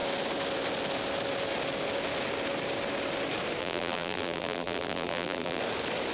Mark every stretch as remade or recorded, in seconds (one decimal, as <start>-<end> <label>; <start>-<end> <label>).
0.0-3.6 recorded; 3.6-5.6 remade; 5.6-6.1 recorded